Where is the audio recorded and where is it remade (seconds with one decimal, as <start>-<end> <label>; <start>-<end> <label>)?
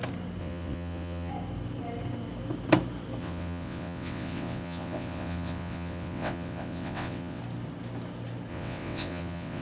0.0-0.4 recorded; 0.4-1.3 remade; 1.3-3.2 recorded; 3.2-7.4 remade; 7.4-8.5 recorded; 8.5-9.6 remade